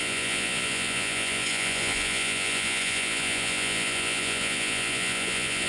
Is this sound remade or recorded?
remade